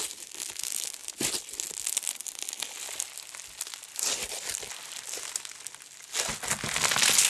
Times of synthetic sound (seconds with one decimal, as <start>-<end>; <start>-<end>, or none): none